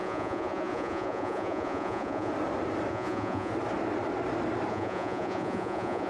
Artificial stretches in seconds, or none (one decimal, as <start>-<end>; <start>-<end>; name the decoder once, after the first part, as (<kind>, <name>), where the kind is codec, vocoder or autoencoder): 0.0-2.3 (vocoder, Vocos); 2.9-3.5; 4.7-6.1